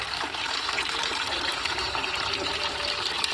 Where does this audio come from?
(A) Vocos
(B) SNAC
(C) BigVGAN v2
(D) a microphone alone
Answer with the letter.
C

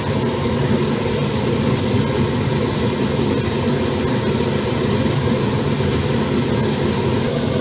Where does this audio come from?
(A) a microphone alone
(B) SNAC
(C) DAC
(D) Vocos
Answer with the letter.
A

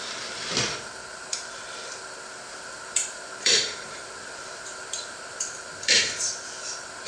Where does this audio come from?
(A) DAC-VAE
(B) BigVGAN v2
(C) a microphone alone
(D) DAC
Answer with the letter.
B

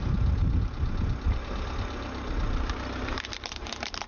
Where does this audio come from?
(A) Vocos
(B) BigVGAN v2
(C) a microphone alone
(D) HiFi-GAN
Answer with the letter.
B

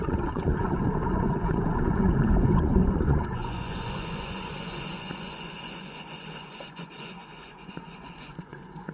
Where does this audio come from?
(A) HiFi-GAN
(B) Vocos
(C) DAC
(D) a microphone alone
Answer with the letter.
B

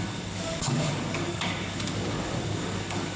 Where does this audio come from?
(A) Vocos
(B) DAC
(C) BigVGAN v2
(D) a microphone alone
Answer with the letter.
B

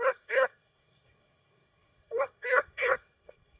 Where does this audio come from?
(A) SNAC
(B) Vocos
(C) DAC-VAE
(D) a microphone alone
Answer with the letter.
A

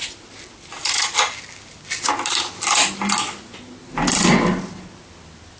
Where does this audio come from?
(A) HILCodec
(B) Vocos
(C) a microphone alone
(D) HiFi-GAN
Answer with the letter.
C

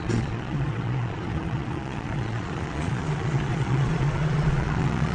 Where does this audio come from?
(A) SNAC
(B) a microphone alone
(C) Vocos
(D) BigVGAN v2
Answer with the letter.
C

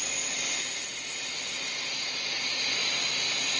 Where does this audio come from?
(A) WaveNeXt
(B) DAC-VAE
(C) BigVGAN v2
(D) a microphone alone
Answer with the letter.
D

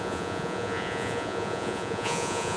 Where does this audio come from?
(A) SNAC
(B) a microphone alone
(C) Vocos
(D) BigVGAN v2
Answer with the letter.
C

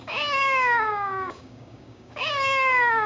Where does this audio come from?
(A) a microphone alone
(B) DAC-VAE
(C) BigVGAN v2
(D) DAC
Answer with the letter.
D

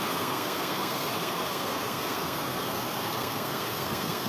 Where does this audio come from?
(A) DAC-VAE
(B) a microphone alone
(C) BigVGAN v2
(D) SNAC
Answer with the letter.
D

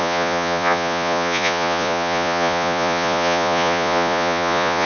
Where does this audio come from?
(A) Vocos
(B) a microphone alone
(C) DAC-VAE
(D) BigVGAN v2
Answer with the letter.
A